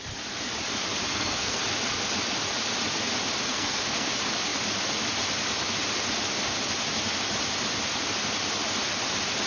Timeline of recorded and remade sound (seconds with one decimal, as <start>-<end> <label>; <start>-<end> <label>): 0.0-1.1 recorded; 1.1-1.6 remade; 1.6-3.5 recorded; 3.5-4.1 remade; 4.1-9.5 recorded